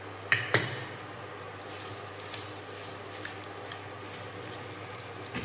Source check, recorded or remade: recorded